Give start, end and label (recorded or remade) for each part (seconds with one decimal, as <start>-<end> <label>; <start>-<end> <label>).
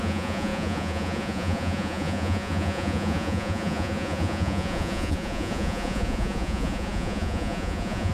0.0-8.1 remade